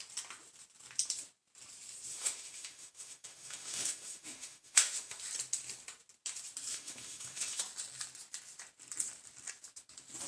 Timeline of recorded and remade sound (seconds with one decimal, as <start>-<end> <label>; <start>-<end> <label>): 0.0-2.1 recorded; 2.1-5.2 remade; 5.2-6.7 recorded; 6.7-7.6 remade; 7.6-10.3 recorded